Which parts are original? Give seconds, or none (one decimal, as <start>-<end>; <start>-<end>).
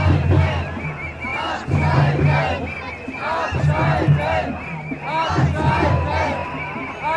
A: 0.0-7.2